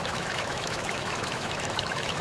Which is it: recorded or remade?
remade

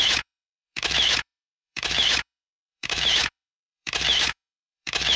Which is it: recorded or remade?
remade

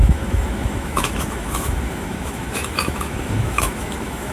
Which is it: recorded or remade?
remade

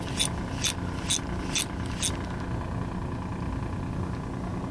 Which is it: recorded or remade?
recorded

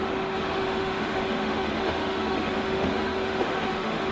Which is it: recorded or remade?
remade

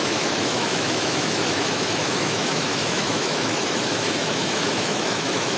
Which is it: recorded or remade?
remade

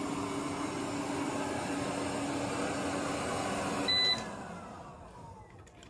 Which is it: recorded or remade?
recorded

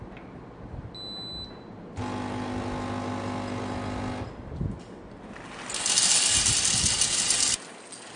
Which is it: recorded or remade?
recorded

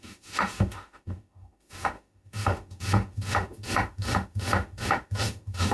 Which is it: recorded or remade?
remade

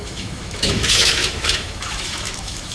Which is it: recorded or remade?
remade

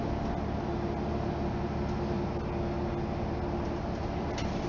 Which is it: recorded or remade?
recorded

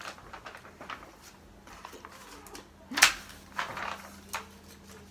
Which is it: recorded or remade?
recorded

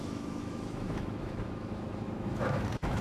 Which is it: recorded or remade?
remade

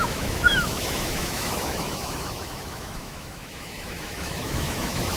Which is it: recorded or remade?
remade